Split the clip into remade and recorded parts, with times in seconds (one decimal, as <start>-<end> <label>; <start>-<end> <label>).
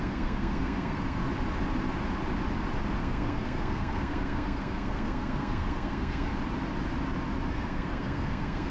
0.0-1.2 remade; 1.2-3.0 recorded; 3.0-6.3 remade; 6.3-7.5 recorded; 7.5-8.7 remade